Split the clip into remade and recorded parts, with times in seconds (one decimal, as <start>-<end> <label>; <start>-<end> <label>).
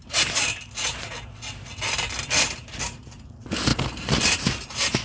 0.0-5.0 recorded